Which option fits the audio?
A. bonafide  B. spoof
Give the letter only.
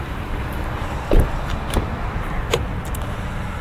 B